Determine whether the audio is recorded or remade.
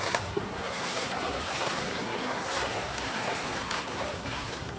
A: remade